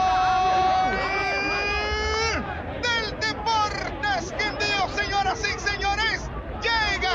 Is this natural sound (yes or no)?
yes